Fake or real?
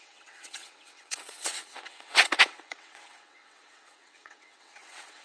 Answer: fake